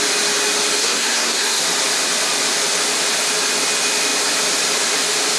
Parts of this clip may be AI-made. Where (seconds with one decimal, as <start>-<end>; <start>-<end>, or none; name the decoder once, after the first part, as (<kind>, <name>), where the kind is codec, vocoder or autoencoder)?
0.8-1.6 (codec, SNAC)